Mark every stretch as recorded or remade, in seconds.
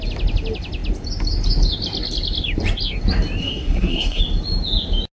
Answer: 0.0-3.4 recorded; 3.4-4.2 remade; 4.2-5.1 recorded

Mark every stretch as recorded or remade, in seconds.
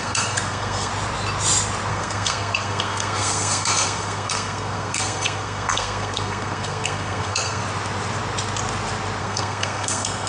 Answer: 0.0-0.9 remade; 0.9-1.9 recorded; 1.9-7.6 remade; 7.6-9.2 recorded; 9.2-10.3 remade